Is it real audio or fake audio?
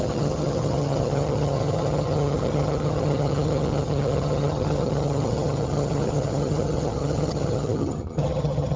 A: fake